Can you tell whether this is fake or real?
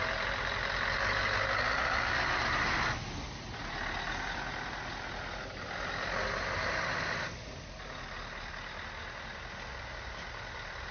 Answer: real